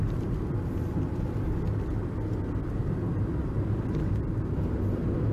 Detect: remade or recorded recorded